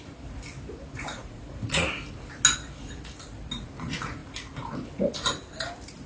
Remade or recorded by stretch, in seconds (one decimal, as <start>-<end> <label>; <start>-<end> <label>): 0.0-1.1 recorded; 1.1-1.9 remade; 1.9-6.1 recorded